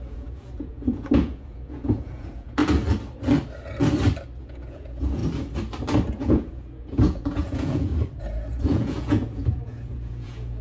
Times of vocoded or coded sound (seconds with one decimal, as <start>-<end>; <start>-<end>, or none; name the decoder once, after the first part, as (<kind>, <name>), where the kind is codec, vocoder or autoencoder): 0.0-2.6 (vocoder, Vocos); 4.4-5.2; 6.1-7.9; 8.5-10.6